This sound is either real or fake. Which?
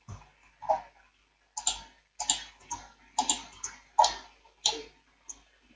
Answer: real